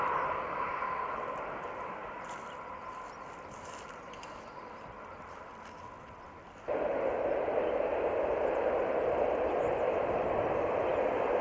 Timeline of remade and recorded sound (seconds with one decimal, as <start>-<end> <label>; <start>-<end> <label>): 0.0-11.4 recorded